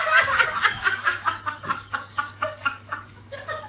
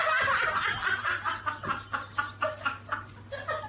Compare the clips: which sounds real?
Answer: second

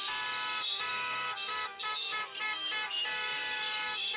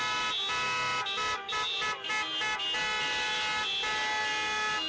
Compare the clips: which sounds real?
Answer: second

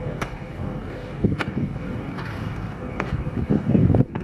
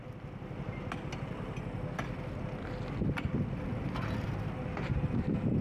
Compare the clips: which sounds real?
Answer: second